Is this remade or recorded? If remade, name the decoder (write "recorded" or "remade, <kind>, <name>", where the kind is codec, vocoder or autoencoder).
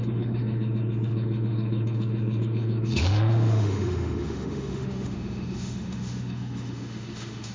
remade, autoencoder, DAC-VAE